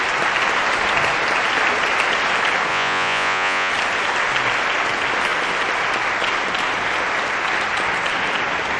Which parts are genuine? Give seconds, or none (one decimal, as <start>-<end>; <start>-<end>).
0.0-2.7; 3.7-8.8